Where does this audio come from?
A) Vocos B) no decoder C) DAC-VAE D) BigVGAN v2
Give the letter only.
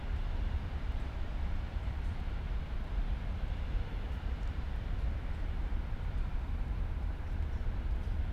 D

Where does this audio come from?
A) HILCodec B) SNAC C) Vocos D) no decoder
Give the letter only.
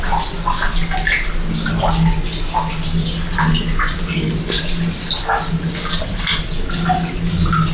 D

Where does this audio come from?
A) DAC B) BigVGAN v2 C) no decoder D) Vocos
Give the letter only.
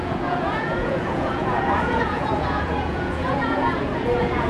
D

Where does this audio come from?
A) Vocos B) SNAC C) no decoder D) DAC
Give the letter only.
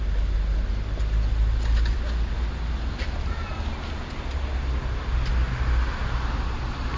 C